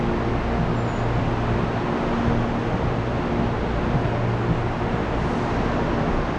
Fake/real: real